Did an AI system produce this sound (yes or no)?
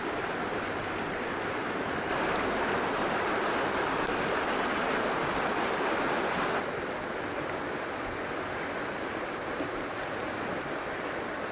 no